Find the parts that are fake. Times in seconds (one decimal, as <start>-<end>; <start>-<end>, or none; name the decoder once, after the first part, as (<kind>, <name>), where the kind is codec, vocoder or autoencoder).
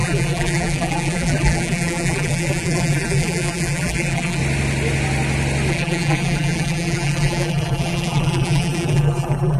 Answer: 0.0-4.4 (vocoder, BigVGAN v2); 5.7-9.6